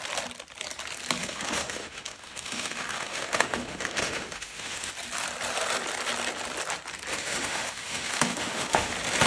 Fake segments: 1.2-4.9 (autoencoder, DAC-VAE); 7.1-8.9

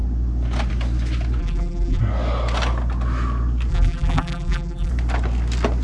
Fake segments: 1.4-2.0 (vocoder, BigVGAN v2); 3.7-4.9

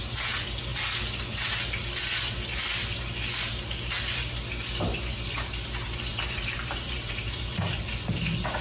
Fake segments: 6.1-7.6 (vocoder, BigVGAN v2)

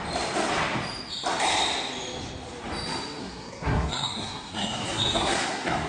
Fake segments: 3.2-5.9 (codec, SNAC)